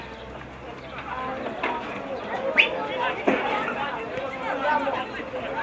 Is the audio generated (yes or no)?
no